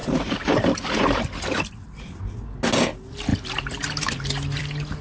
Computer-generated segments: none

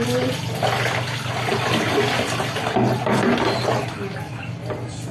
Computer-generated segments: none